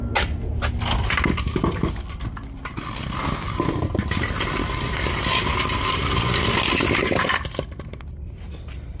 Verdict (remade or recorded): recorded